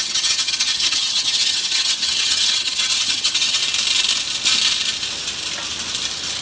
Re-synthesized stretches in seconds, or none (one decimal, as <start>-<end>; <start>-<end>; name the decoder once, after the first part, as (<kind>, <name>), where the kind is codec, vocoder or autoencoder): 0.0-3.6 (vocoder, HiFi-GAN)